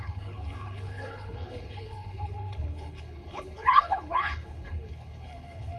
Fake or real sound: fake